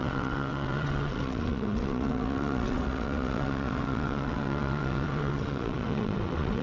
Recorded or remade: remade